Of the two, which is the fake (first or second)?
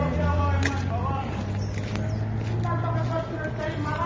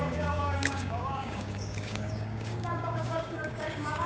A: second